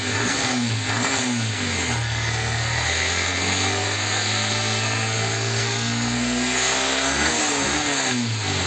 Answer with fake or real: fake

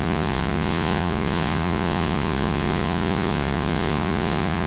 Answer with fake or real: fake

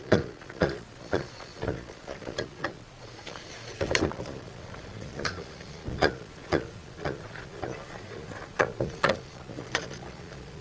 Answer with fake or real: fake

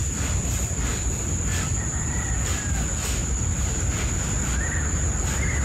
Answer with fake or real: real